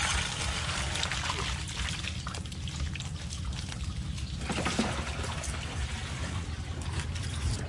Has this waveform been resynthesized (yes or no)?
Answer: no